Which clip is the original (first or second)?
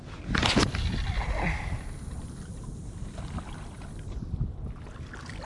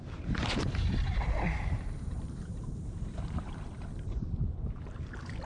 first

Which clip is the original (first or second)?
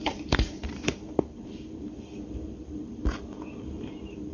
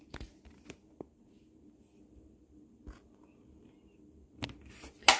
second